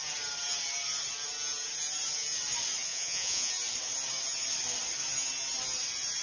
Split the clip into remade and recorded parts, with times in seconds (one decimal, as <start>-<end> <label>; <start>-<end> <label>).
0.0-2.9 recorded; 2.9-3.5 remade; 3.5-6.2 recorded